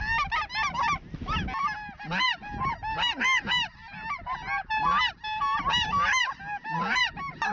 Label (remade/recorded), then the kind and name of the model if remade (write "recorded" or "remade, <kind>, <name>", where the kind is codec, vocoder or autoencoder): recorded